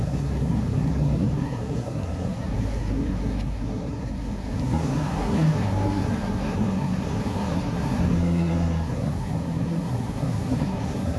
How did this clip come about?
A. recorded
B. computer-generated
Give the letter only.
B